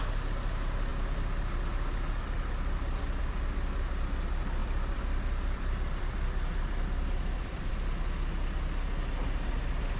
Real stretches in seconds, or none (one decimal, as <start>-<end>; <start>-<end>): 0.0-4.6; 7.7-10.0